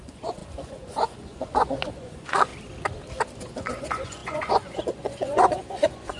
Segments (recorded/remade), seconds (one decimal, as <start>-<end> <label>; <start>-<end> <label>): 0.0-2.5 remade; 2.5-3.4 recorded; 3.4-6.2 remade